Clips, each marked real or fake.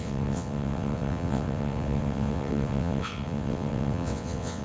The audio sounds fake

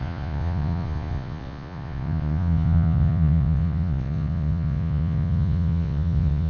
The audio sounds fake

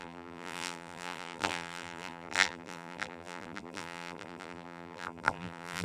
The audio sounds fake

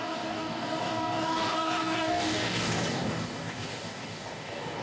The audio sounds fake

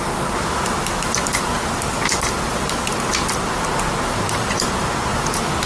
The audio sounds fake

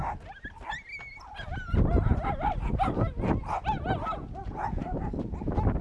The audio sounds real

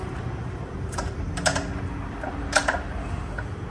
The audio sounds fake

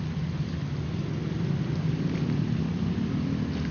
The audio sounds real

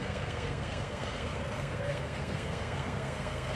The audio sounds fake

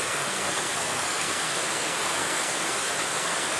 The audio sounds fake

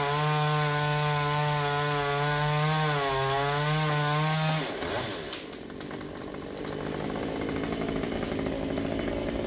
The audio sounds real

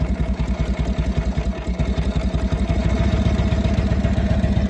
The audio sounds real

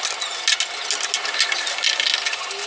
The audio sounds real